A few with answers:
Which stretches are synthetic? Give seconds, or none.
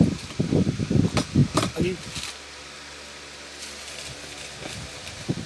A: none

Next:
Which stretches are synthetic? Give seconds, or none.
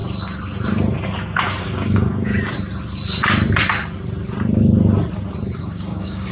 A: 1.6-2.3 (codec, DAC); 5.6-6.3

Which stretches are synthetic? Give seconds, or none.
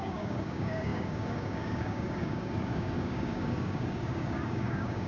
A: 0.0-5.1 (codec, DAC)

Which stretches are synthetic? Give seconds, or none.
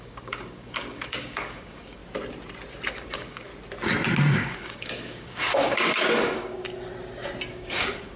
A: 0.0-2.0 (codec, DAC); 2.9-3.5; 4.3-6.6; 7.5-8.2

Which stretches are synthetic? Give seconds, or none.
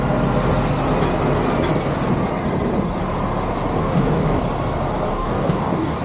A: 3.8-4.4 (codec, DAC); 5.1-6.0